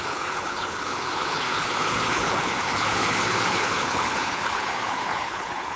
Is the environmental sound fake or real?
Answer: fake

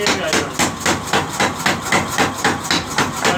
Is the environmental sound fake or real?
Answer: real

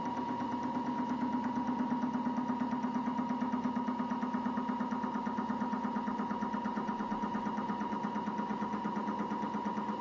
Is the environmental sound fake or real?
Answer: real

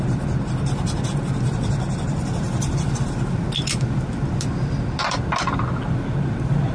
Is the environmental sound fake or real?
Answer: real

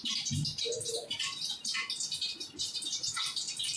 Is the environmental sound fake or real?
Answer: fake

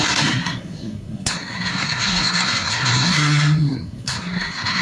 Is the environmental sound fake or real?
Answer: fake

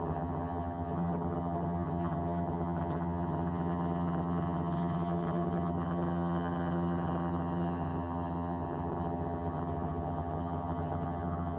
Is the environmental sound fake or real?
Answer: fake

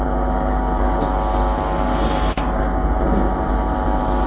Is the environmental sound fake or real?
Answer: real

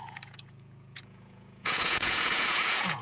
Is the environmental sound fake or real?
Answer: fake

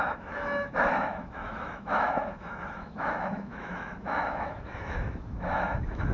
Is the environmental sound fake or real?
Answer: fake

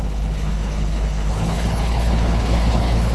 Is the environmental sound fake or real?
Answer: fake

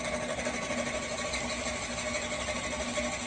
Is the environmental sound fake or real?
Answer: real